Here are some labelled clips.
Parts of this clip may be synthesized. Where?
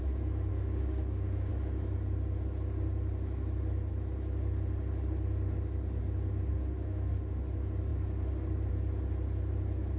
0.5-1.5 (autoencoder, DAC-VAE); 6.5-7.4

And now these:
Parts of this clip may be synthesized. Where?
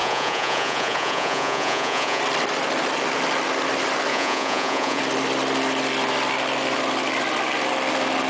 0.0-2.2 (vocoder, Vocos); 4.1-5.0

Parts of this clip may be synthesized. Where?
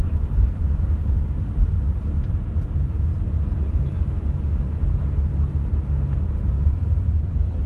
0.0-3.1 (vocoder, BigVGAN v2); 6.3-7.7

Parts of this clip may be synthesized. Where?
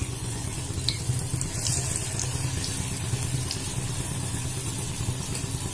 0.0-0.6 (vocoder, Vocos)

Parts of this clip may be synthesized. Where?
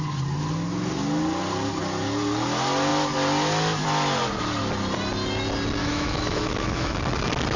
5.8-7.0 (autoencoder, DAC-VAE)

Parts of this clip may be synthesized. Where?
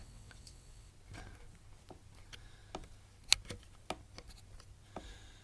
0.0-0.9 (vocoder, WaveNeXt)